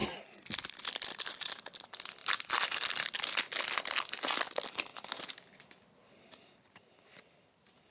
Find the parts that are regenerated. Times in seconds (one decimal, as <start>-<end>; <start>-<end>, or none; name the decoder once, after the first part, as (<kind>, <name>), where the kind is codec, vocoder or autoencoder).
none

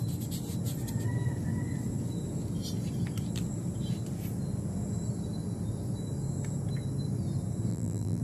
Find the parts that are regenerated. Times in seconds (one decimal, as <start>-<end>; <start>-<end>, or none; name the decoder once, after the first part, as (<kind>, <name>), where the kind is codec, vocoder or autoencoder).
7.7-8.2 (vocoder, BigVGAN v2)

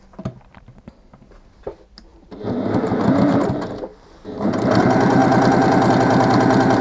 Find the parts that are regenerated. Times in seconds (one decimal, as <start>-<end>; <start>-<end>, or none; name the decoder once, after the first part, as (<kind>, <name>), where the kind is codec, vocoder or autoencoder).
none

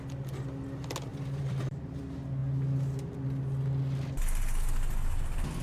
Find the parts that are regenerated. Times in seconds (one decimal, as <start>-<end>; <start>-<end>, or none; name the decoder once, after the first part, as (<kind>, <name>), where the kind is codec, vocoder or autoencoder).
1.1-2.0 (vocoder, BigVGAN v2)

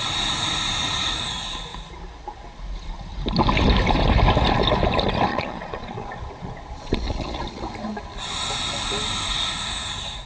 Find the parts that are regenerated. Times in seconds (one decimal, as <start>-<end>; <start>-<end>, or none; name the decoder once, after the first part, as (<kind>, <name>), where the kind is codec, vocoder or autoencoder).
5.3-7.6 (vocoder, Vocos)

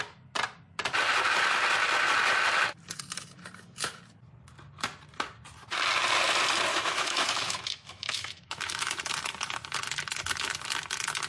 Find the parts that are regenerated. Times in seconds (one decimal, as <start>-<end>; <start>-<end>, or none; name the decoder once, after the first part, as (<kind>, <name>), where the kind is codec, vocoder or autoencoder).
6.7-9.0 (autoencoder, DAC-VAE)